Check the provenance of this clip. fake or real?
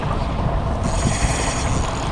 real